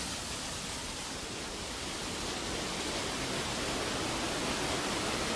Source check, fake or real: real